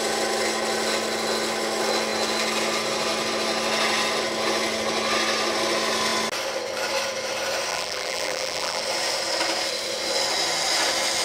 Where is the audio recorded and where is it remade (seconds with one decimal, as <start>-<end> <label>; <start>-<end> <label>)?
0.0-7.7 recorded; 7.7-8.8 remade; 8.8-11.2 recorded